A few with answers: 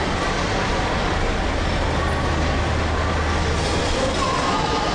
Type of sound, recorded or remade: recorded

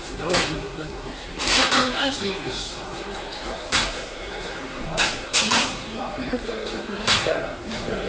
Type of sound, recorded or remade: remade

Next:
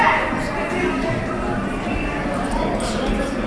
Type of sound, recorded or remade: recorded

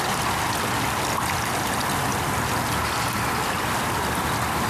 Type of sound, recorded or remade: recorded